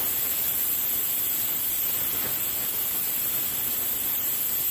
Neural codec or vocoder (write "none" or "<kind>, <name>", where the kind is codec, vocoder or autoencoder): none